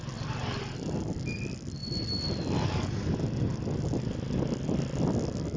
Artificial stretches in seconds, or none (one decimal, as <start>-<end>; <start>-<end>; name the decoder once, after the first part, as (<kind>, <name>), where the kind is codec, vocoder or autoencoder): none